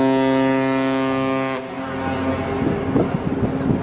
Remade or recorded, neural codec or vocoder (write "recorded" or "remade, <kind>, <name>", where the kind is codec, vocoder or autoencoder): recorded